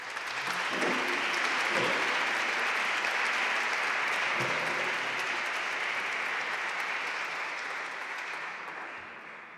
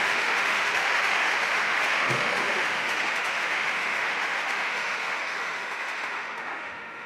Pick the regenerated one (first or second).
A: second